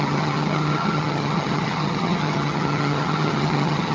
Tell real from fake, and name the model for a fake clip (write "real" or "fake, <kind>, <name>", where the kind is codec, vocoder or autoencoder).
fake, vocoder, HiFi-GAN